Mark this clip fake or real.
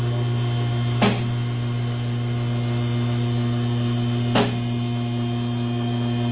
real